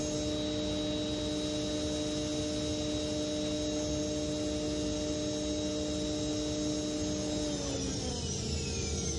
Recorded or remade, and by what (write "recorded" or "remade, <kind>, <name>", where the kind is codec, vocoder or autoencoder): recorded